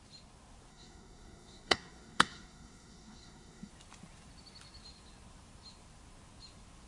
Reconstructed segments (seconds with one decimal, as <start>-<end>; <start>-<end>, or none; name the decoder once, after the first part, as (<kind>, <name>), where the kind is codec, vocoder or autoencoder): 0.7-3.7 (codec, SNAC)